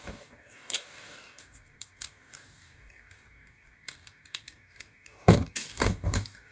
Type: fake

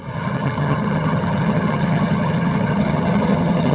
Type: fake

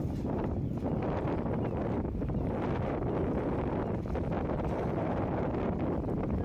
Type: real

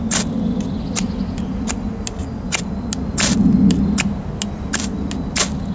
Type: real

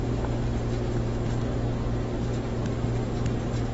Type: real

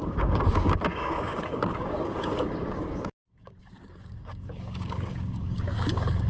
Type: fake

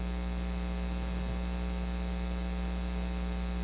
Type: real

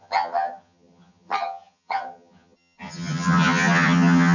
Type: fake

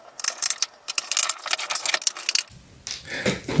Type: real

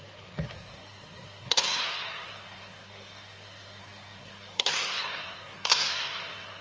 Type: fake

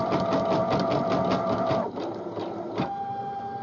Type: real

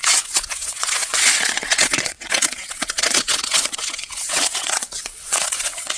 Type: fake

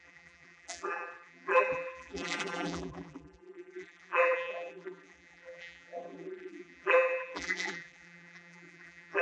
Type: fake